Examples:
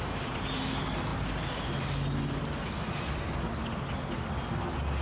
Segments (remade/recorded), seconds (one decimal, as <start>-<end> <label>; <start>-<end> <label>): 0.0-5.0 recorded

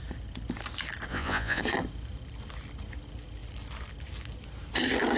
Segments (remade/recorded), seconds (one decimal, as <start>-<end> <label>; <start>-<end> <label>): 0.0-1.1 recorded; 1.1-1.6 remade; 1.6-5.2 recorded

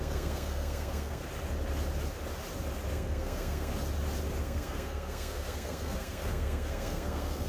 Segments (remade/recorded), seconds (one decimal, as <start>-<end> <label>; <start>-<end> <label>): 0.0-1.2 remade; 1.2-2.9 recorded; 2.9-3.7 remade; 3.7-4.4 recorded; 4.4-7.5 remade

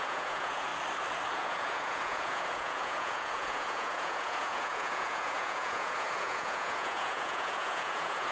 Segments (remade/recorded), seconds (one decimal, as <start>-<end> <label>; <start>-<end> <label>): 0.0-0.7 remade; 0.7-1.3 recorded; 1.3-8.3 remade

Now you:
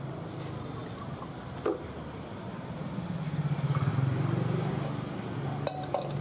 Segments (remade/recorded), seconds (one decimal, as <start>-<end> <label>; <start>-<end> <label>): 0.0-3.9 recorded; 3.9-4.7 remade; 4.7-6.2 recorded

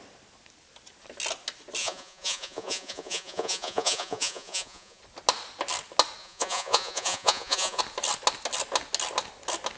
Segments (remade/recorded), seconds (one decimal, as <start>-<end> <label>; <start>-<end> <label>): 0.0-1.8 recorded; 1.8-5.0 remade; 5.0-6.2 recorded; 6.2-7.8 remade; 7.8-9.8 recorded